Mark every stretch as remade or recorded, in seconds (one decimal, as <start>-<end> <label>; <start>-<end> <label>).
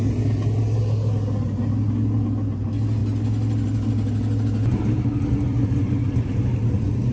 0.0-7.1 recorded